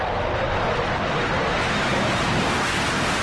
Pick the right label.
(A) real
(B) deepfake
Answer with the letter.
A